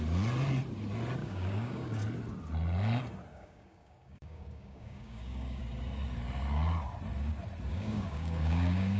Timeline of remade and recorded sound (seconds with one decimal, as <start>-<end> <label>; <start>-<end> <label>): 0.0-1.2 recorded; 1.2-2.0 remade; 2.0-3.3 recorded; 3.3-5.6 remade; 5.6-7.7 recorded; 7.7-9.0 remade